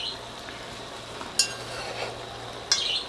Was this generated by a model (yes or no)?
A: no